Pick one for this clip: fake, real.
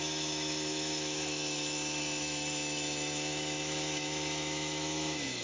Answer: fake